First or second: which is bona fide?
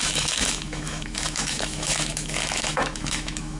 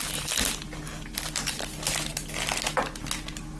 second